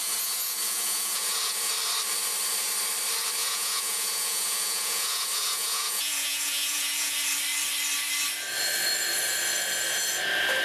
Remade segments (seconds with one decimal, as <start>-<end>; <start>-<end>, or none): 0.0-1.7; 3.4-7.1